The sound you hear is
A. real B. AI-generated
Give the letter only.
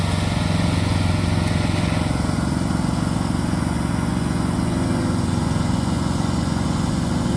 B